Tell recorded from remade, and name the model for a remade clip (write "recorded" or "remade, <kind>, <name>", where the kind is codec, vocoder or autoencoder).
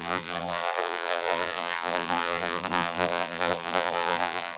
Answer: remade, vocoder, BigVGAN v2